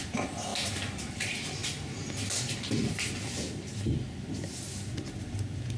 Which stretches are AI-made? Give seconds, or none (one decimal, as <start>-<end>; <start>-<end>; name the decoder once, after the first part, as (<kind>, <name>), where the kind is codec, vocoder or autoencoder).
0.0-1.6 (vocoder, BigVGAN v2); 4.6-5.8